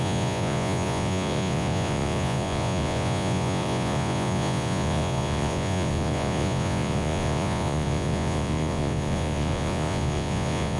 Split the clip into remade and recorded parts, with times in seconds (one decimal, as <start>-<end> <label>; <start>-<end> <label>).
0.0-10.8 remade